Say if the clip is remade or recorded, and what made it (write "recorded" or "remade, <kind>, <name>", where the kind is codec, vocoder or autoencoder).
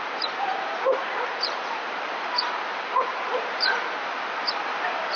remade, vocoder, BigVGAN v2